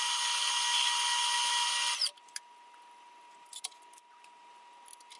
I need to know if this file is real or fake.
real